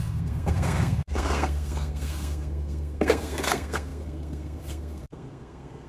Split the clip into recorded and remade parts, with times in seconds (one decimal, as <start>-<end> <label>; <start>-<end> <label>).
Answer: 0.0-5.9 remade